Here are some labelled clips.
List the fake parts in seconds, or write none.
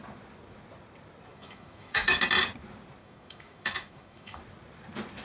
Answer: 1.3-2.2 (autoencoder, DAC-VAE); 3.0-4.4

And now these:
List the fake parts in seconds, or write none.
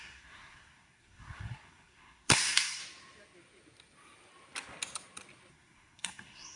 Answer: 0.0-2.8 (codec, SNAC); 5.5-6.6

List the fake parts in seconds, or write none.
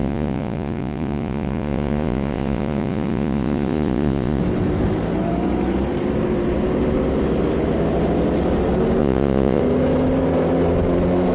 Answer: 0.0-4.4 (vocoder, Vocos); 9.0-9.6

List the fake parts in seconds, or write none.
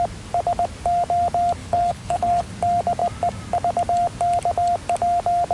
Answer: 1.6-2.5 (codec, HILCodec)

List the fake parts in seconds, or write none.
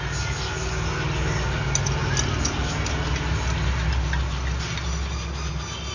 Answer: none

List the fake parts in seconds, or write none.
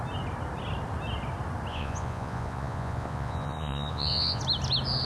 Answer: 1.7-4.4 (vocoder, Vocos)